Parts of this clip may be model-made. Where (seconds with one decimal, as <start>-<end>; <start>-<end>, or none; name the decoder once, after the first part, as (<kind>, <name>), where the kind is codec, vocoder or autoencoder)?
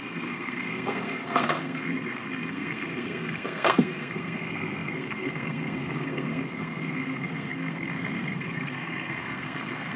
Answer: 0.0-10.0 (codec, SNAC)